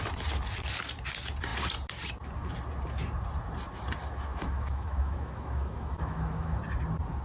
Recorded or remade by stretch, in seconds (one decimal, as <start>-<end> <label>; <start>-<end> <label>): 0.0-4.3 recorded; 4.3-6.6 remade; 6.6-7.2 recorded